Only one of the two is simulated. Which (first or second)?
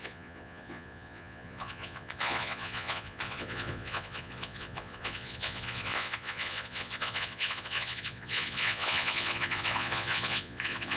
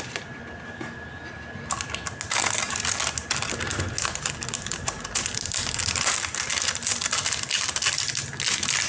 first